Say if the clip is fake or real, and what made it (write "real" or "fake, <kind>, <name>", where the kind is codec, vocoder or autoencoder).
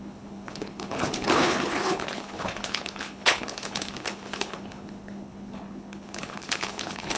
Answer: fake, codec, HILCodec